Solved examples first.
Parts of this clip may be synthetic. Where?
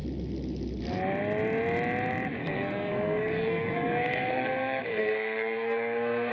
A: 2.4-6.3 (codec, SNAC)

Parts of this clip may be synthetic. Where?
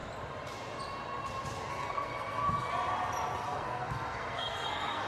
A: 1.7-2.7 (codec, SNAC); 3.4-5.1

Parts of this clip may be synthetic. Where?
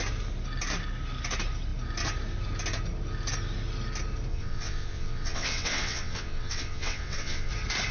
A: 4.3-7.5 (vocoder, WaveNeXt)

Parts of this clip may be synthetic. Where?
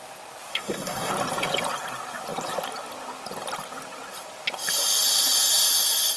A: 0.5-1.1 (codec, SNAC)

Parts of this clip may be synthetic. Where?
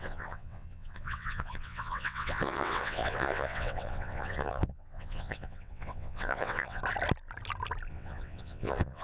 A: 0.0-6.8 (vocoder, WaveNeXt); 7.9-9.0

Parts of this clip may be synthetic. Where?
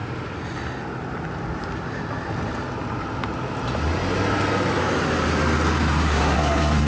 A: 6.0-6.9 (codec, SNAC)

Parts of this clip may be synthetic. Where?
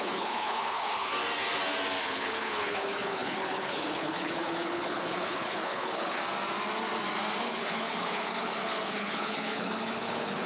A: 0.0-1.1 (codec, HILCodec); 2.0-6.2; 7.4-10.5